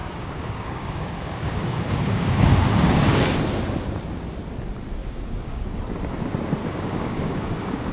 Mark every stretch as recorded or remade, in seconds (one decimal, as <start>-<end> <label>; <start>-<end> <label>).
0.0-3.2 remade; 3.2-5.0 recorded; 5.0-5.7 remade; 5.7-6.6 recorded; 6.6-7.9 remade